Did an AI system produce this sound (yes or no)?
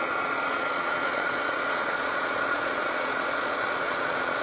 yes